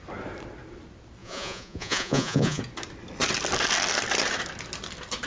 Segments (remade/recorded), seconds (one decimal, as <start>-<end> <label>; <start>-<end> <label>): 0.0-1.2 recorded; 1.2-2.6 remade; 2.6-5.3 recorded